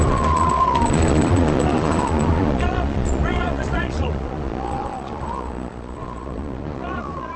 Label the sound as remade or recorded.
remade